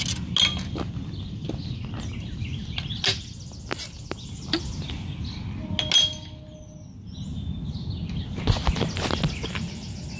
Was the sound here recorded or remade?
recorded